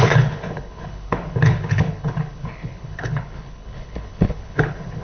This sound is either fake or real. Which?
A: fake